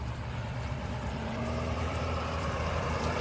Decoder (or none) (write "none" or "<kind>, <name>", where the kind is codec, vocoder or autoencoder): vocoder, BigVGAN v2